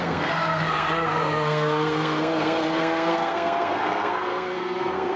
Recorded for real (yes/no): no